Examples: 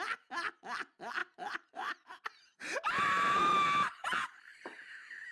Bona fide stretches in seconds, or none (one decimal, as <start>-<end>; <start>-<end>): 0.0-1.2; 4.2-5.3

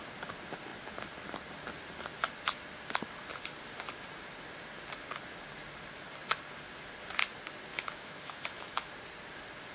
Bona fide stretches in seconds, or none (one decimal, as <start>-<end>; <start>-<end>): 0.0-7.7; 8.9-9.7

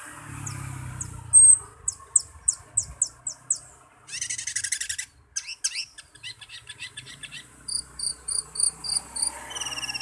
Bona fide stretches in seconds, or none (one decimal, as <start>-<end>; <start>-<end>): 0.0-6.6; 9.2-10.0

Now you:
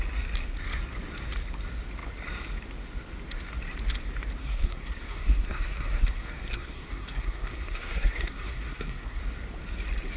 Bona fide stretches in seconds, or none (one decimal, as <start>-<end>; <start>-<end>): 0.0-4.4; 9.2-10.2